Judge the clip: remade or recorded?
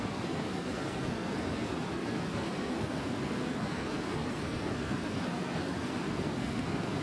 remade